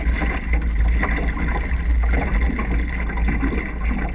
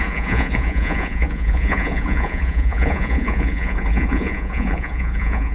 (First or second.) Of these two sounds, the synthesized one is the second